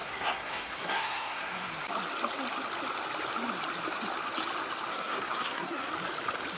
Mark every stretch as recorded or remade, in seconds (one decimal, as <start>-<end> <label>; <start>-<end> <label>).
0.0-1.7 remade; 1.7-4.9 recorded; 4.9-5.9 remade; 5.9-6.6 recorded